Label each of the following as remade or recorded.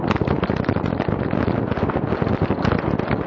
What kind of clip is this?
recorded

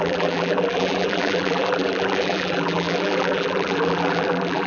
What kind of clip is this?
remade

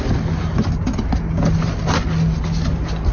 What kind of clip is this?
recorded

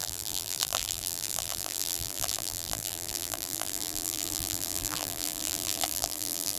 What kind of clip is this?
remade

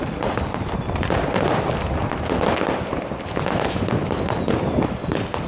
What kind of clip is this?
remade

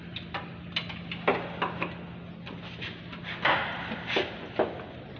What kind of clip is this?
recorded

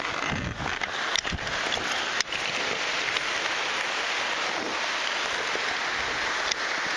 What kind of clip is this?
recorded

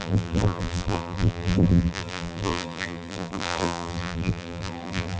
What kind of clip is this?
remade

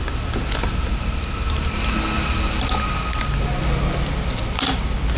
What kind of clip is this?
recorded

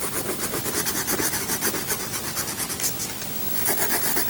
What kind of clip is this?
recorded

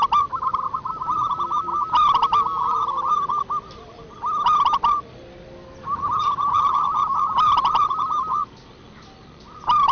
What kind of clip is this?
recorded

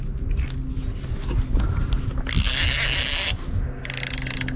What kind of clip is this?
recorded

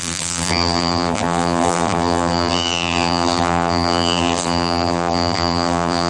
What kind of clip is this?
remade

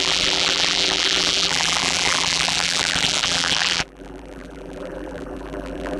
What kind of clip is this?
remade